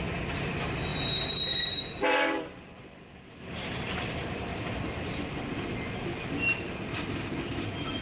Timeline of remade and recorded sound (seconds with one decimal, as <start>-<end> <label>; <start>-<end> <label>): 0.0-0.9 recorded; 0.9-3.0 remade; 3.0-8.0 recorded